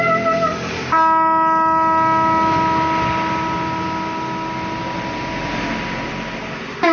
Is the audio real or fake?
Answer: real